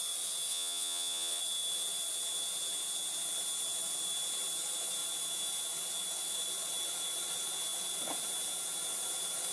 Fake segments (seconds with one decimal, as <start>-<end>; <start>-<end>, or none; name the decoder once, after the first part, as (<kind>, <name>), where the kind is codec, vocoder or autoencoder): 0.5-1.4 (vocoder, WaveNeXt)